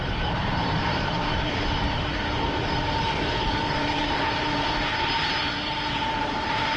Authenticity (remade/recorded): remade